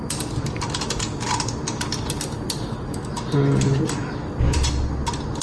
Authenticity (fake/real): real